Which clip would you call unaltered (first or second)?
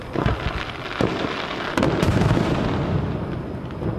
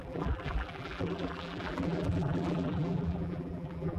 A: first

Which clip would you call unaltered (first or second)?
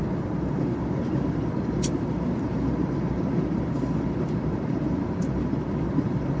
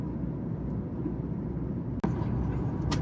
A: second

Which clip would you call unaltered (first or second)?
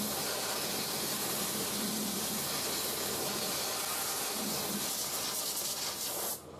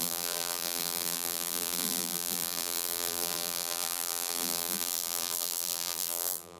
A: first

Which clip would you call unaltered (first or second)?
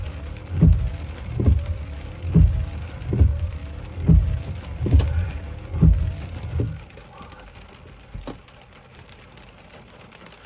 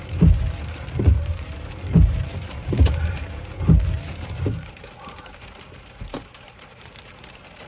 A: first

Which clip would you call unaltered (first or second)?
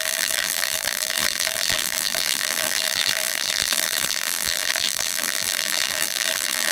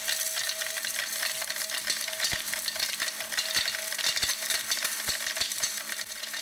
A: second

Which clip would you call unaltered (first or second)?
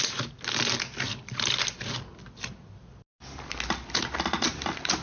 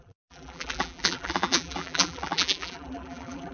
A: first